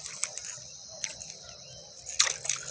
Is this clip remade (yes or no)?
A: no